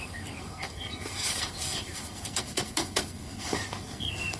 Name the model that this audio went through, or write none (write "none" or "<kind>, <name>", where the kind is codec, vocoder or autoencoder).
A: codec, SNAC